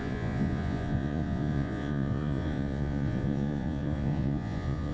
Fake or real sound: fake